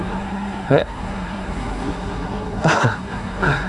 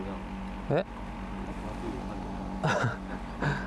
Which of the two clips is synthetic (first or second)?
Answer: first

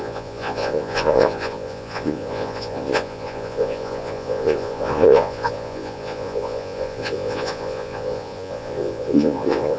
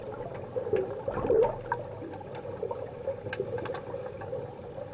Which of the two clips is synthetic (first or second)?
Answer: first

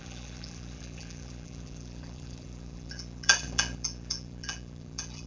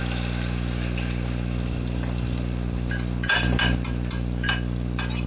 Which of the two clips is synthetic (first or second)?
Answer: first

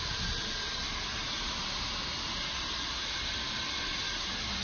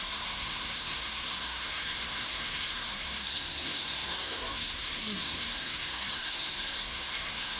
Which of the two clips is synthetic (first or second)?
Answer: second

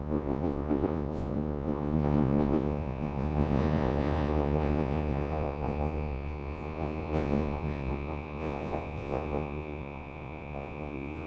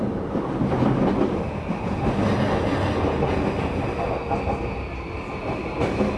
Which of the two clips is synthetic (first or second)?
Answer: first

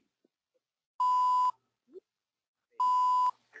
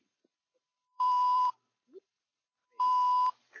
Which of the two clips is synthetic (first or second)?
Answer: second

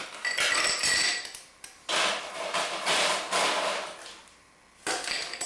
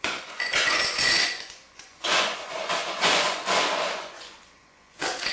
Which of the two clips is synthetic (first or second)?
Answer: second